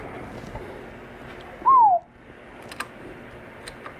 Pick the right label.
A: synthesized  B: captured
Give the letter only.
B